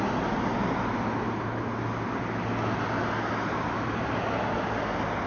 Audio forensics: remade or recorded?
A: recorded